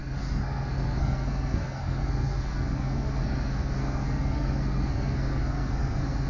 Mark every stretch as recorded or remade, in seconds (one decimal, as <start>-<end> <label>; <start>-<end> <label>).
0.0-6.3 remade